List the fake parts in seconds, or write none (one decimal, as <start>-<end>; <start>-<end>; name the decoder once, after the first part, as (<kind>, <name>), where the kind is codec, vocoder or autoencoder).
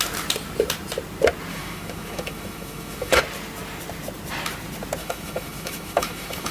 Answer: 1.5-3.2 (autoencoder, DAC-VAE); 5.0-6.5